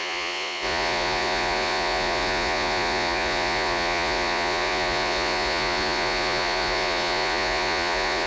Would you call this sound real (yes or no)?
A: no